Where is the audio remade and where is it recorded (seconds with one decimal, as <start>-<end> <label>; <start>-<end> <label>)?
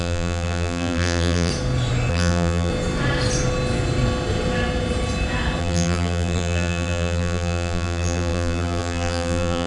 0.0-1.5 remade; 1.5-2.1 recorded; 2.1-2.7 remade; 2.7-5.6 recorded; 5.6-9.7 remade